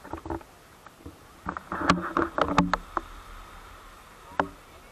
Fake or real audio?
real